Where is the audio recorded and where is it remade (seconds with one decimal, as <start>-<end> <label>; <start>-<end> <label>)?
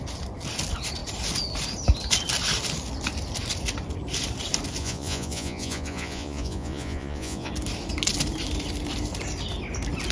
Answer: 0.0-4.8 recorded; 4.8-7.5 remade; 7.5-10.1 recorded